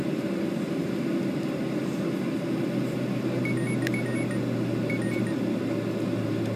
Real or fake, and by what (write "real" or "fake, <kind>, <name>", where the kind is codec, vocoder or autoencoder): real